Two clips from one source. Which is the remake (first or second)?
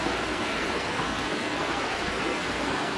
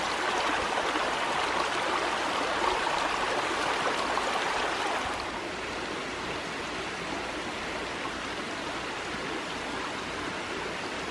first